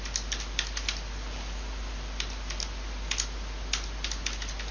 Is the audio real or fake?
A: real